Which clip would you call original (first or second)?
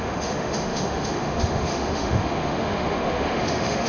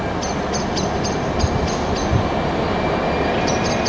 second